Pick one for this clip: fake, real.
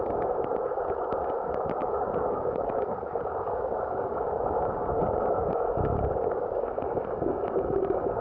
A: fake